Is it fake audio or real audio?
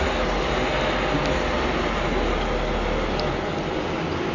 real